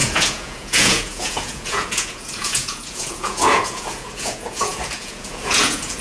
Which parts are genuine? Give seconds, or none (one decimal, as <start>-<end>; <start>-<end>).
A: none

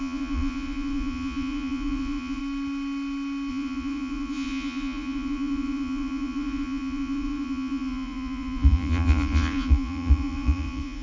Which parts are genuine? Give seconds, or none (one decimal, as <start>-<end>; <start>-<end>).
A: 2.4-3.5

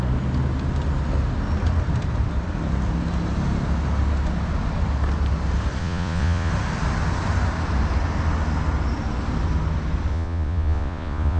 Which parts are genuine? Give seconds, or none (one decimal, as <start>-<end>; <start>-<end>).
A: 0.0-5.8; 6.5-10.1

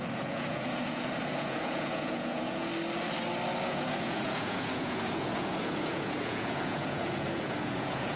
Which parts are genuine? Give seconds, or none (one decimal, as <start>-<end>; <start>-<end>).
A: 2.7-3.6

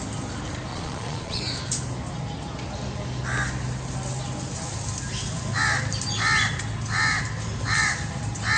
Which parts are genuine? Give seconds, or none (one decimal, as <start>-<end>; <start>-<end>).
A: 0.0-0.7; 1.4-8.6